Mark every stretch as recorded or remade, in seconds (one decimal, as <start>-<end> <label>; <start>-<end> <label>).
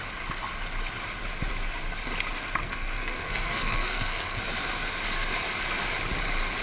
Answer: 0.0-2.6 recorded; 2.6-4.4 remade; 4.4-6.6 recorded